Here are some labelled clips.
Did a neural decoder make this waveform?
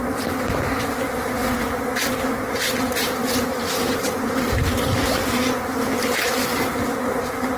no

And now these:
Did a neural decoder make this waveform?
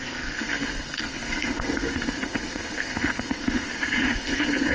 yes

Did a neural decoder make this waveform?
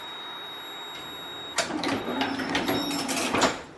no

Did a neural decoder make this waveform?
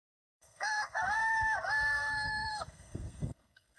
yes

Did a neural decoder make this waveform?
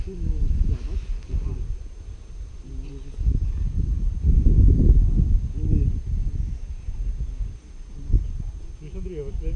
no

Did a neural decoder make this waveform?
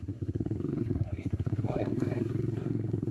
yes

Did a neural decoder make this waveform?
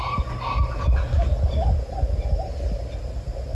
no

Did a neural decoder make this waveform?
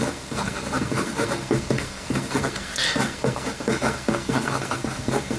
yes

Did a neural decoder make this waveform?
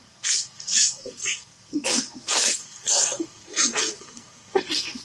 yes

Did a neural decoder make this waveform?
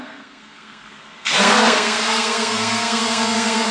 yes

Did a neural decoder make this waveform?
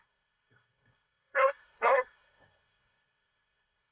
yes